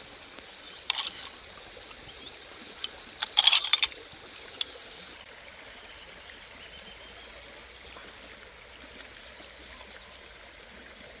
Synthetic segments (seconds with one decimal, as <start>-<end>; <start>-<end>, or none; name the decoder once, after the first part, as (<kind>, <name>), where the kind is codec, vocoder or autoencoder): none